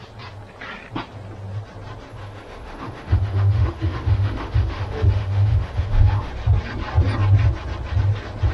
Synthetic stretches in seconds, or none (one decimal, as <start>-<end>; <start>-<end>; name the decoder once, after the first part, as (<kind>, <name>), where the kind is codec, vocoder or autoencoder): 2.1-6.3 (autoencoder, DAC-VAE)